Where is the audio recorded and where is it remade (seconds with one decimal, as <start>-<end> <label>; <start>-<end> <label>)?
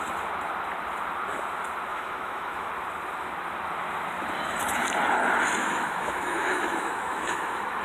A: 0.0-1.9 recorded; 1.9-2.7 remade; 2.7-5.6 recorded; 5.6-7.8 remade